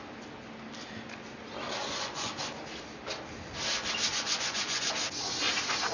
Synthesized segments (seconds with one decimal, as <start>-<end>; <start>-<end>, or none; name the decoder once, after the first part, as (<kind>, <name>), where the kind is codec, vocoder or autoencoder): 1.8-2.3 (vocoder, Vocos); 4.1-4.9